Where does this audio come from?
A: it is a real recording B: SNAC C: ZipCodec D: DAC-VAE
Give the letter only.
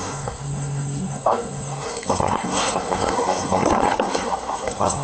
B